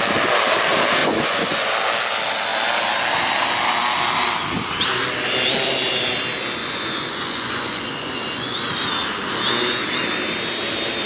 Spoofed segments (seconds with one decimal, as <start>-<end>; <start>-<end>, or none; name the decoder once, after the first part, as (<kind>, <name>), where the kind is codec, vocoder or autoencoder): 1.0-1.7 (vocoder, Vocos); 6.6-8.7